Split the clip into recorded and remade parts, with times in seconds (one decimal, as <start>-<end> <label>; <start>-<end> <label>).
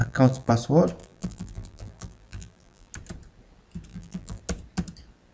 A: 0.0-0.5 remade; 0.5-1.0 recorded; 1.0-2.9 remade; 2.9-3.9 recorded; 3.9-4.4 remade; 4.4-5.3 recorded